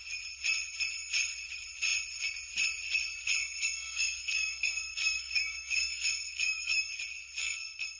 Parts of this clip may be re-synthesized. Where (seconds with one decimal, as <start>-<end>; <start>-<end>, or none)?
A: 3.4-6.9; 7.4-8.0